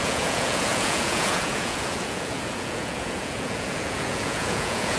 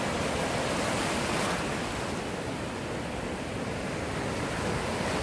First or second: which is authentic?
second